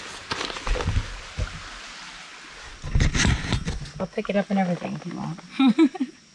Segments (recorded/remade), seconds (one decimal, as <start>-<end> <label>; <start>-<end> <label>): 0.0-6.3 recorded